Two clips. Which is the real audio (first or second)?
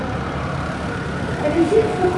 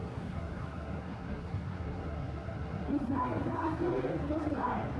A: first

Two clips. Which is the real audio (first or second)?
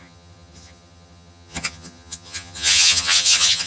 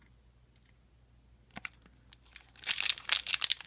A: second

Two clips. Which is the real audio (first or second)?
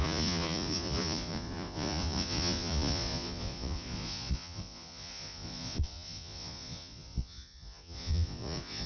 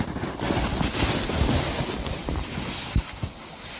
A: second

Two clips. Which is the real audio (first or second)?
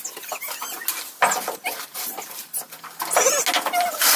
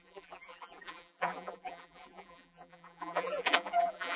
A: first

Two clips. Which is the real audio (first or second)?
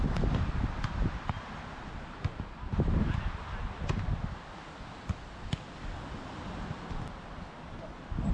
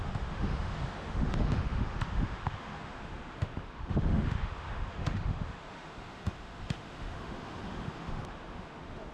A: first